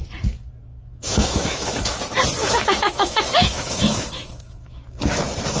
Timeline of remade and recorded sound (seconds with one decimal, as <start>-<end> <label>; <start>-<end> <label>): 0.0-0.7 recorded; 0.7-2.0 remade; 2.0-2.4 recorded; 2.4-5.0 remade; 5.0-5.6 recorded